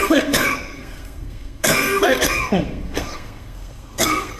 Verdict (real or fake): fake